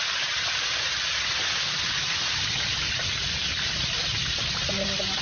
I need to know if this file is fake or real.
real